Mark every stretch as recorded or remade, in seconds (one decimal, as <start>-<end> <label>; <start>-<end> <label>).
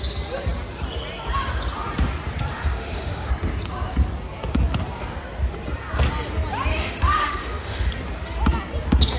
0.0-2.5 recorded; 2.5-3.3 remade; 3.3-6.7 recorded; 6.7-7.9 remade; 7.9-9.2 recorded